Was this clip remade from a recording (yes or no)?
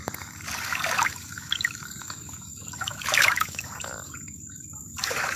yes